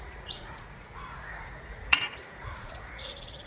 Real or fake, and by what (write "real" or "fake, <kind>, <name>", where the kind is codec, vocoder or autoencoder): fake, vocoder, Vocos